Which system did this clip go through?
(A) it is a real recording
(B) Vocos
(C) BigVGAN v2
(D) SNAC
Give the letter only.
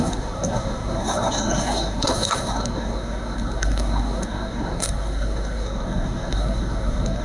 D